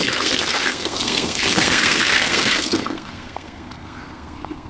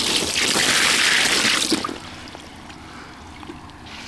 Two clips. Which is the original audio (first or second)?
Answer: second